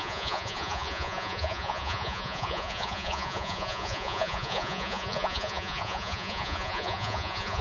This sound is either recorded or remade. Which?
remade